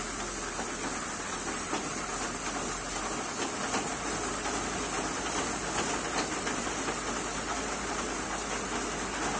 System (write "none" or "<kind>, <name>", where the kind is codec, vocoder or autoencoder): none